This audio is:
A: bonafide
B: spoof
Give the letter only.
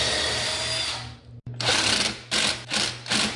A